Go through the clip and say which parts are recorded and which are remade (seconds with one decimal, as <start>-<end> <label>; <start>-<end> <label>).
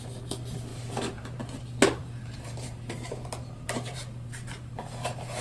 0.0-0.7 recorded; 0.7-1.6 remade; 1.6-2.0 recorded; 2.0-5.4 remade